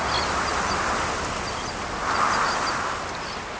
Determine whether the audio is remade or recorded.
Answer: recorded